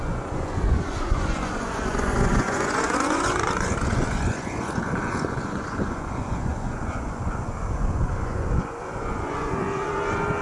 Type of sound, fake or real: fake